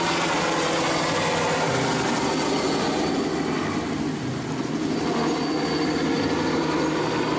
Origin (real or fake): real